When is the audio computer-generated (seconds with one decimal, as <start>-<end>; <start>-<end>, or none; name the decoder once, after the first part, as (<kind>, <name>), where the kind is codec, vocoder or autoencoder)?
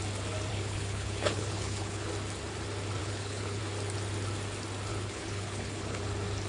0.5-2.1 (codec, HILCodec); 3.0-3.6; 4.9-6.0